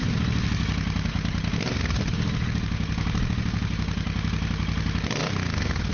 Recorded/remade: recorded